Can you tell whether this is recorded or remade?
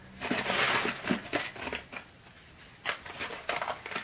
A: recorded